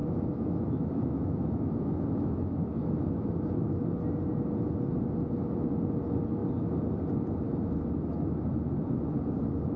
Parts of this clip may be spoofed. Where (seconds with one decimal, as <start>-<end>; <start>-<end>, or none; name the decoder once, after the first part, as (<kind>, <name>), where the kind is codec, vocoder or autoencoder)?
0.0-3.8 (autoencoder, DAC-VAE)